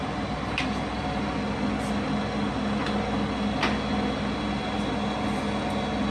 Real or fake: real